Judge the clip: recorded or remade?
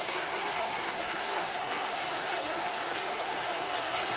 remade